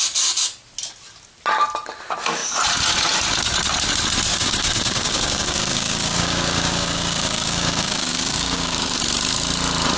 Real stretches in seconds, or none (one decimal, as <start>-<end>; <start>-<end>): 0.0-4.3; 9.0-10.0